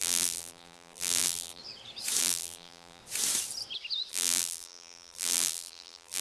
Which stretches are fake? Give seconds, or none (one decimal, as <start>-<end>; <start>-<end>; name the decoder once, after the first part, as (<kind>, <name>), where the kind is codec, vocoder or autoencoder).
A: 0.0-1.6 (vocoder, BigVGAN v2); 2.2-3.0; 4.1-6.2

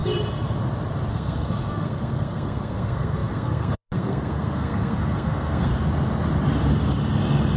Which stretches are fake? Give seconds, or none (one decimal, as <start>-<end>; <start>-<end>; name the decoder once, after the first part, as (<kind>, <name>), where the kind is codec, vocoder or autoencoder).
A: 1.1-5.7 (codec, SNAC)